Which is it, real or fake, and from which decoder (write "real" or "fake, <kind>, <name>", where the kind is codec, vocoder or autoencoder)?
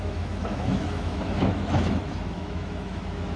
fake, autoencoder, DAC-VAE